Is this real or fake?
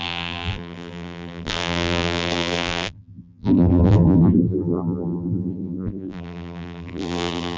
fake